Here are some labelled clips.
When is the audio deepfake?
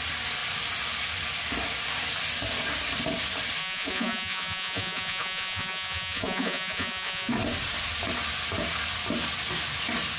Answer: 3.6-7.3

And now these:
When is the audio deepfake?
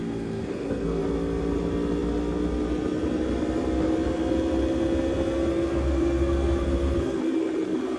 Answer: 0.0-1.0; 5.5-7.2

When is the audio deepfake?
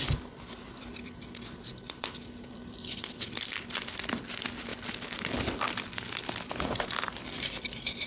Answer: 0.0-4.7; 5.5-8.1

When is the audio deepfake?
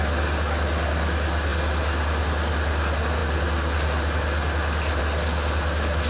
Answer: none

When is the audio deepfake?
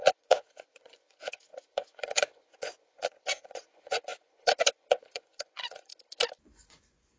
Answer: 0.0-5.9; 6.4-7.2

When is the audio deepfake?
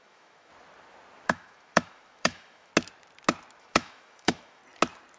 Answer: 0.0-0.5; 1.3-2.7; 3.6-4.6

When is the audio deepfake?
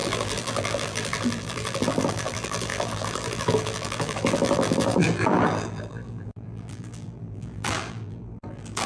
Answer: 0.0-8.9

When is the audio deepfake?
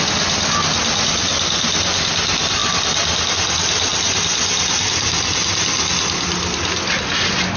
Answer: none